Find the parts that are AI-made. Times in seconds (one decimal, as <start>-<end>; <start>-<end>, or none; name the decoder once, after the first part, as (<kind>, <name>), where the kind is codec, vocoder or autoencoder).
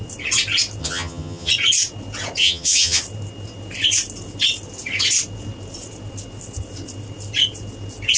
0.8-1.5 (vocoder, HiFi-GAN); 2.4-3.0